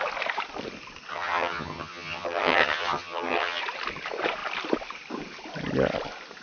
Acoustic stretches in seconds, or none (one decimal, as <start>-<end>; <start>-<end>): 0.0-1.1; 3.6-6.4

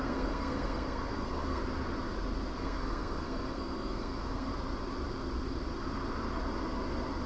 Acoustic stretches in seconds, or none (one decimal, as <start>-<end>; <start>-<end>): 1.6-2.6; 4.5-7.3

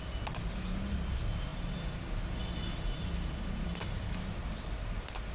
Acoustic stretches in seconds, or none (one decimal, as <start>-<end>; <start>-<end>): 0.0-5.3

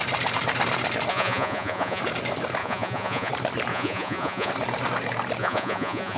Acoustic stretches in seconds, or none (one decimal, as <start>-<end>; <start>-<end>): 0.0-1.1; 2.0-2.6; 3.3-3.7; 4.5-5.4

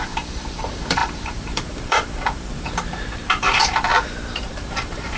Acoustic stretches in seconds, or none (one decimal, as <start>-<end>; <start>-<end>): 3.9-4.4

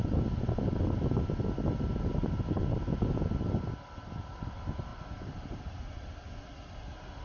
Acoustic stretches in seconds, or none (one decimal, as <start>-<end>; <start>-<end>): 0.0-7.2

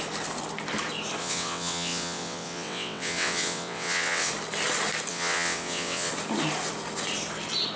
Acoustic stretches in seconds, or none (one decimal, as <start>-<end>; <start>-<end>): 0.0-1.2; 4.3-5.1; 6.1-7.8

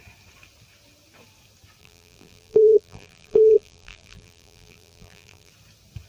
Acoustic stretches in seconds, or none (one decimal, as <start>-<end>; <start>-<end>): 0.0-1.8; 5.5-6.1